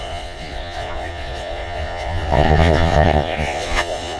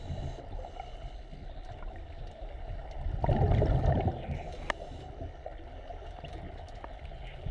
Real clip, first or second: second